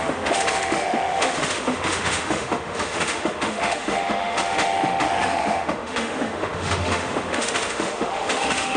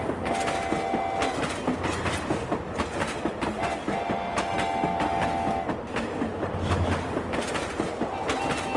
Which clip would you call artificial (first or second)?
first